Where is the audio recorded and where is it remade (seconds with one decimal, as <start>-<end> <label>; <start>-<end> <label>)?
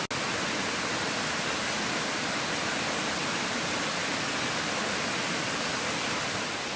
0.0-6.8 recorded